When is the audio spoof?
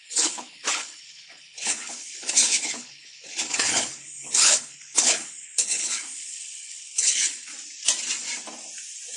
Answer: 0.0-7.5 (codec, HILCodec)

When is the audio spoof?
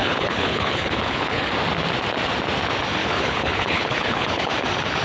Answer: 0.0-1.5 (codec, HILCodec); 3.0-4.5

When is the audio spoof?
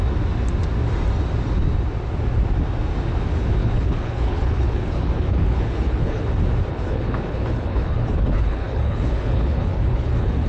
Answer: 3.6-6.2 (codec, HILCodec); 6.7-10.5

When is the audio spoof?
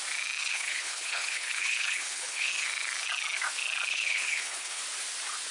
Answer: 0.4-2.5 (codec, HILCodec); 3.9-4.8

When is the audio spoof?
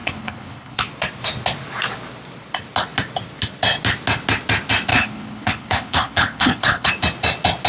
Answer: 0.0-0.9 (codec, HILCodec); 4.9-6.9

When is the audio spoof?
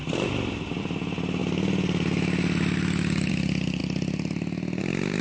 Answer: none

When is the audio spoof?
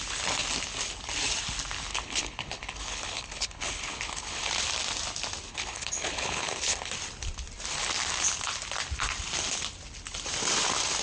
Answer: 1.9-4.5 (codec, HILCodec); 5.5-6.9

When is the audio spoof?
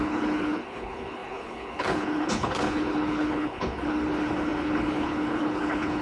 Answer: 0.0-6.0 (codec, HILCodec)